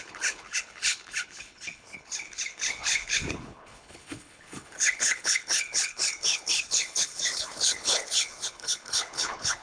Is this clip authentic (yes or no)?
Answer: no